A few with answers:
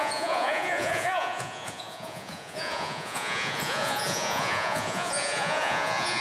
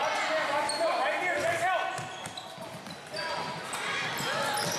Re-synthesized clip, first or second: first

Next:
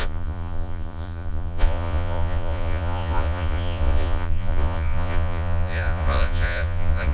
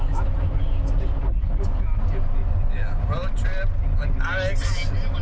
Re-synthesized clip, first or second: first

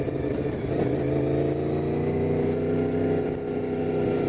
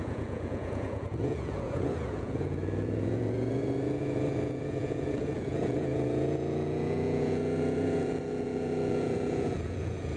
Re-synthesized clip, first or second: second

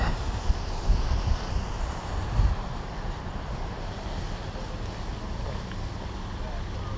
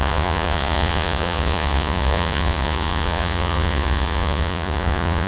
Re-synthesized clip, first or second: second